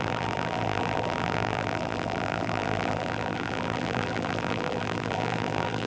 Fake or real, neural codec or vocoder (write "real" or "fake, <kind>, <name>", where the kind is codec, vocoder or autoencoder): fake, vocoder, BigVGAN v2